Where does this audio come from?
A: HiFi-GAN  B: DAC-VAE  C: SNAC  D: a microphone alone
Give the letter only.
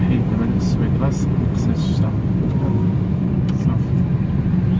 D